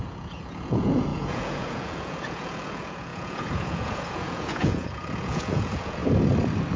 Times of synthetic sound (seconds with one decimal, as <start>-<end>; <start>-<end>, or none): 0.0-6.0